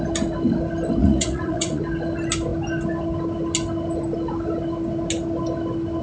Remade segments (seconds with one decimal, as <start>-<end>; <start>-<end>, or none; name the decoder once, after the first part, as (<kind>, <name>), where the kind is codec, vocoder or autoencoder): 1.0-1.8 (vocoder, Vocos)